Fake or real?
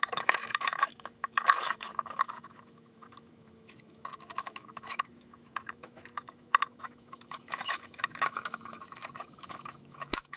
fake